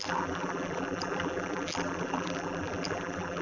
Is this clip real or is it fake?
fake